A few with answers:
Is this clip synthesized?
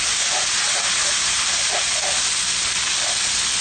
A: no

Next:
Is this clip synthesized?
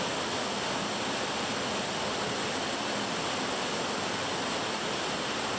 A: no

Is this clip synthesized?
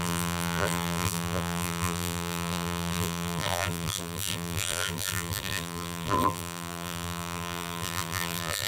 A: yes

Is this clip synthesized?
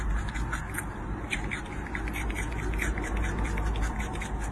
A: no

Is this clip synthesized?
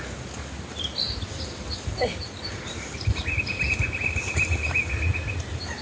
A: no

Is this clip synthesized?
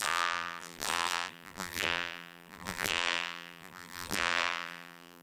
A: yes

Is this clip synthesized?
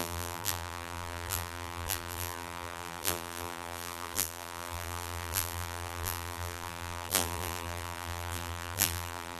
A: yes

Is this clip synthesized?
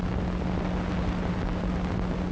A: no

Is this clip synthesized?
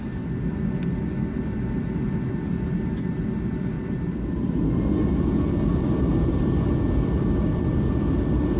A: no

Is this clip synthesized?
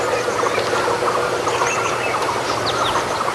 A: yes